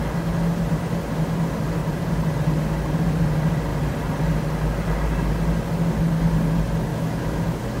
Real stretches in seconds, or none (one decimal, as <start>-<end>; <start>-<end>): 0.0-6.9